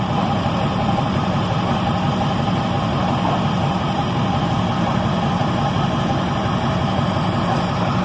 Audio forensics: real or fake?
fake